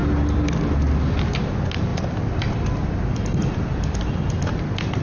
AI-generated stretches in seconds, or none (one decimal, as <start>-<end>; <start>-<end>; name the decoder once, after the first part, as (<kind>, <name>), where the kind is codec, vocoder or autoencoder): 1.9-5.0 (vocoder, BigVGAN v2)